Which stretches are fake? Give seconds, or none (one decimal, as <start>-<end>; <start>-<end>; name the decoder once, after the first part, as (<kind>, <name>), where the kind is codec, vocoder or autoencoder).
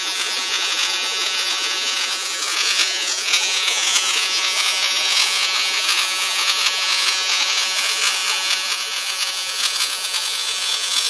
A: 0.0-11.1 (vocoder, Vocos)